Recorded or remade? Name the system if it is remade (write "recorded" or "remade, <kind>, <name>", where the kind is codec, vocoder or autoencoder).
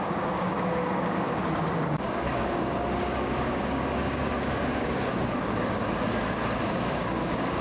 remade, codec, DAC